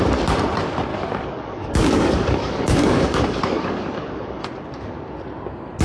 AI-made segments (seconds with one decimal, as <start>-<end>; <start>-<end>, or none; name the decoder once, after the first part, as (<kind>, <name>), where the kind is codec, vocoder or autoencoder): 0.9-4.4 (codec, DAC)